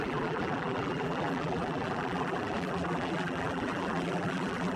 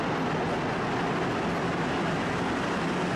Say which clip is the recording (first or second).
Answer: second